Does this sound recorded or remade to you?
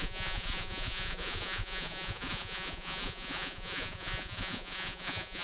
remade